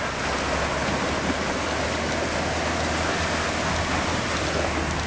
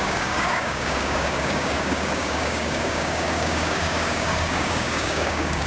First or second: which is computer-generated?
second